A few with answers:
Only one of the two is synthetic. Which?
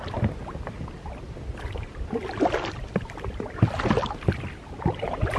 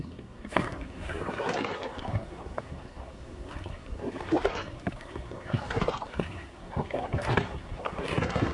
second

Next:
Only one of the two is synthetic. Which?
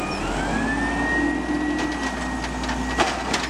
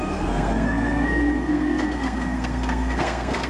second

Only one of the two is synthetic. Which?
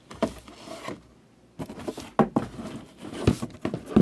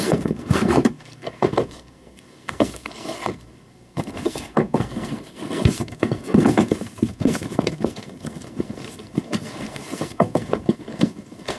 second